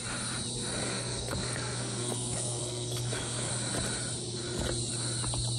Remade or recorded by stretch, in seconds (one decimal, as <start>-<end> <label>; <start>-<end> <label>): 0.0-0.8 recorded; 0.8-3.5 remade; 3.5-5.6 recorded